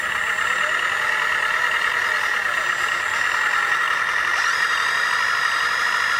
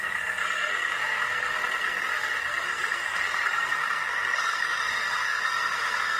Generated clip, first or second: second